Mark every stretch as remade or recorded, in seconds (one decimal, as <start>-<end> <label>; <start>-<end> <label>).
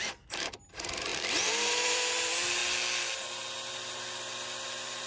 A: 0.0-2.6 remade; 2.6-3.7 recorded; 3.7-5.1 remade